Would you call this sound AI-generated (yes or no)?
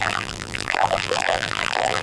yes